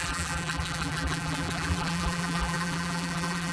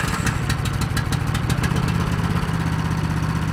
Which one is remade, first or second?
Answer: first